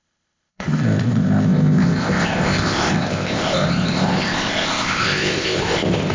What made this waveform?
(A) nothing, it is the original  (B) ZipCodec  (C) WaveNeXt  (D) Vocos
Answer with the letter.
B